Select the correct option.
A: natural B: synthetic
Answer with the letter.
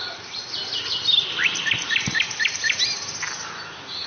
A